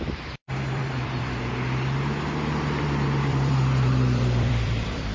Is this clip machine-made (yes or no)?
yes